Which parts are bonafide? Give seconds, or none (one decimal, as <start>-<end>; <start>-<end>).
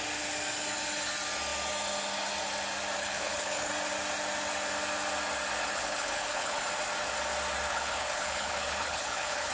0.0-3.0; 3.7-5.7; 6.6-7.7